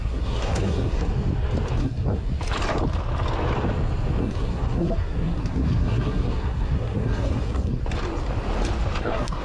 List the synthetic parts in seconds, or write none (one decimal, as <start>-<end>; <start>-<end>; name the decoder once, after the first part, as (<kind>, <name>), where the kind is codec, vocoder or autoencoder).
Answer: 0.0-1.1 (codec, SNAC); 1.8-2.3; 4.2-7.8; 9.0-9.4